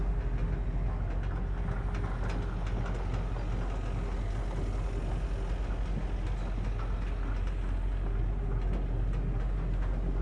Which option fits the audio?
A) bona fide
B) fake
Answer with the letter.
A